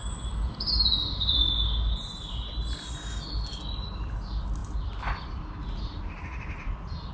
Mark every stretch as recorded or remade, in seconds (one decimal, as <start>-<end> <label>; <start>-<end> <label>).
0.0-7.1 recorded